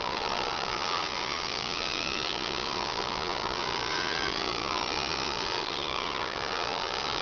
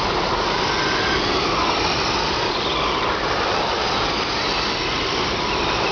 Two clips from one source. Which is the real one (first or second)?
second